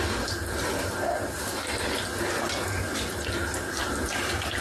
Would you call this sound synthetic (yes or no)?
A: no